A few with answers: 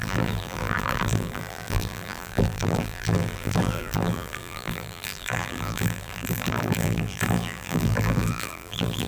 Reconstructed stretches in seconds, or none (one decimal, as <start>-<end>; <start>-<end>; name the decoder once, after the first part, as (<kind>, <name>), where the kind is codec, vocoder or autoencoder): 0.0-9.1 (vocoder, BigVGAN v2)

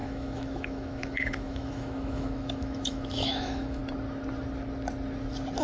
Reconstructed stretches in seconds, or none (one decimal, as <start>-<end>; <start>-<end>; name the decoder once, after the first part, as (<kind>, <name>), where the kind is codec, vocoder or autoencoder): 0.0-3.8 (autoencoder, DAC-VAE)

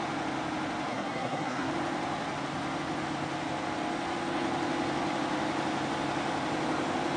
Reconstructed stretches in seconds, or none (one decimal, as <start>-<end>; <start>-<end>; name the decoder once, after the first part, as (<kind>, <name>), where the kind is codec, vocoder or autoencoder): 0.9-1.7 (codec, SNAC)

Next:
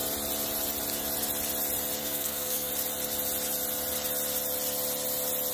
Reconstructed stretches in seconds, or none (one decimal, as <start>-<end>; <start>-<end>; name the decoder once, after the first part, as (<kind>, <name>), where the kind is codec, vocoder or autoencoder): 2.0-2.7 (codec, SNAC)

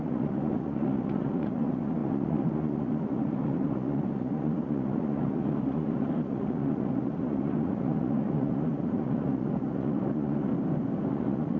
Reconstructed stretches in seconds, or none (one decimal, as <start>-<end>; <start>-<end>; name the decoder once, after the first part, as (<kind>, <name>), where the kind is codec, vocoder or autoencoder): 0.0-10.5 (vocoder, Vocos); 11.1-11.6

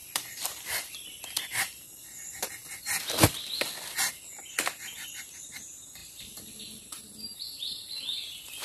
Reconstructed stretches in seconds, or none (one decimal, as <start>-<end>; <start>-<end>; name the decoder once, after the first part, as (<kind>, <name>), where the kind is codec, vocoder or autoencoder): 0.0-2.1 (vocoder, BigVGAN v2)

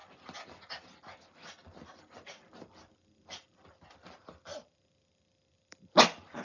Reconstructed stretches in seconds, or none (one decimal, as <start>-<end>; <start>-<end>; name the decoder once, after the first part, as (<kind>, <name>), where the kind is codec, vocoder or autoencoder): none

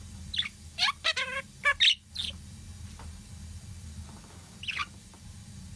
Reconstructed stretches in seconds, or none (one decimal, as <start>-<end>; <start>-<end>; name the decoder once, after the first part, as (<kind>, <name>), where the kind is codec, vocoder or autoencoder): none